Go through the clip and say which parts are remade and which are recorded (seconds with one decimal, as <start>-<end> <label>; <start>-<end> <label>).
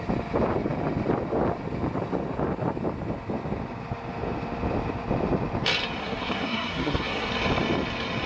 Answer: 0.0-6.0 recorded; 6.0-7.3 remade; 7.3-8.3 recorded